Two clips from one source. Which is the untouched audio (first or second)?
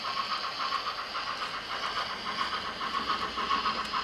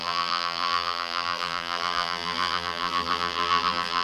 first